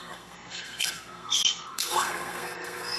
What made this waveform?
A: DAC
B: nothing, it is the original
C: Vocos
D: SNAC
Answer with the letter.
D